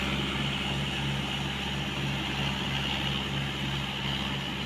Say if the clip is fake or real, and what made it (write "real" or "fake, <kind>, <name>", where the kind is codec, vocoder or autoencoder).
real